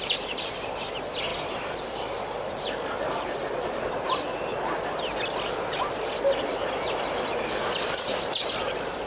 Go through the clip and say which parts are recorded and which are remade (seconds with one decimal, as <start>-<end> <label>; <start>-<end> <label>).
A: 0.0-4.5 remade; 4.5-5.8 recorded; 5.8-9.1 remade